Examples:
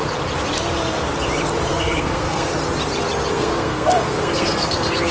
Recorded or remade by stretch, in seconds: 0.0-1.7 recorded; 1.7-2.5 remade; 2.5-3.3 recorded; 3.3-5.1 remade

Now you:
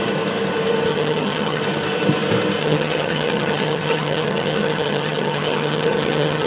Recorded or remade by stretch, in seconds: 0.0-0.9 recorded; 0.9-1.6 remade; 1.6-2.6 recorded; 2.6-6.5 remade

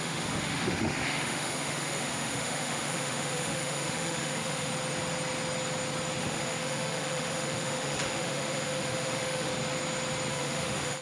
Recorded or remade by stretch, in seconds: 0.0-4.7 remade; 4.7-6.2 recorded; 6.2-9.5 remade; 9.5-10.3 recorded; 10.3-11.0 remade